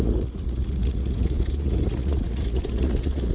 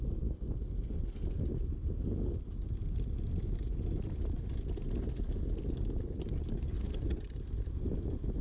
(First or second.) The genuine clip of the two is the second